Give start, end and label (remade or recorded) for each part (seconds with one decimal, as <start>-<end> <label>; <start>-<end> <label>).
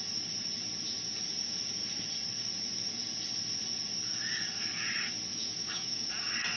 0.0-5.3 recorded; 5.3-6.1 remade; 6.1-6.6 recorded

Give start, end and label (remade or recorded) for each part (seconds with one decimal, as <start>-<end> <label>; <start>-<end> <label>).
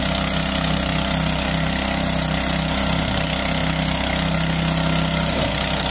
0.0-5.9 recorded